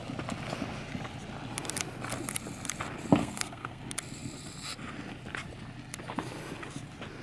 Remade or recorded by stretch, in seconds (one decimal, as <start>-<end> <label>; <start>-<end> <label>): 0.0-3.2 recorded; 3.2-3.8 remade; 3.8-7.2 recorded